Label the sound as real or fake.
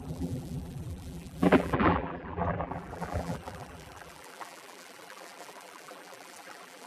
fake